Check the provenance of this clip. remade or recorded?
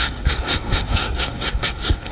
remade